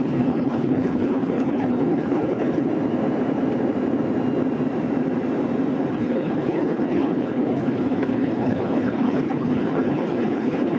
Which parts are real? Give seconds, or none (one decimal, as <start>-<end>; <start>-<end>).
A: 2.7-5.9